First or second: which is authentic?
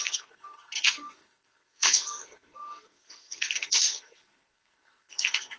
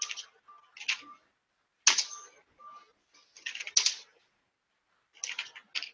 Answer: second